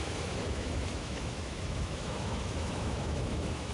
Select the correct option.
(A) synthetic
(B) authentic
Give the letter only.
A